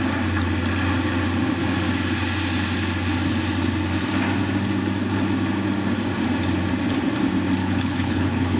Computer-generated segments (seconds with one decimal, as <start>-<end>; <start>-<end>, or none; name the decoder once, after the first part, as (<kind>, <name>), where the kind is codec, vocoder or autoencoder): 7.6-8.6 (codec, HILCodec)